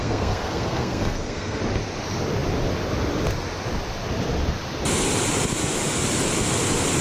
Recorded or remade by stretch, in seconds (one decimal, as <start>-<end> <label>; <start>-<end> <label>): 0.0-1.6 remade; 1.6-7.0 recorded